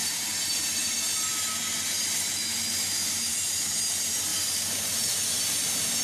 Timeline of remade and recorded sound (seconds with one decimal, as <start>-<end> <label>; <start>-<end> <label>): 0.0-0.9 remade; 0.9-4.3 recorded; 4.3-5.4 remade; 5.4-6.0 recorded